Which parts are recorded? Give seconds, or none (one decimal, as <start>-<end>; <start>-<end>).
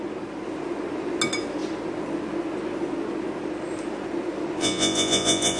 0.0-4.6